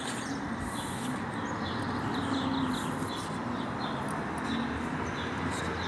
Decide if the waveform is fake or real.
real